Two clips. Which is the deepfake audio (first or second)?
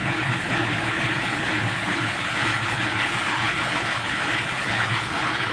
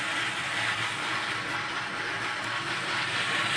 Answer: first